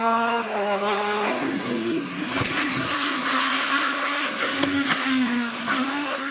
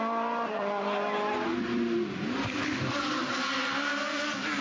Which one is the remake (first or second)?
first